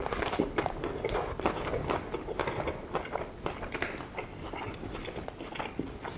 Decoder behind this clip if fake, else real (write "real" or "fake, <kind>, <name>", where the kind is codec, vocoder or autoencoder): real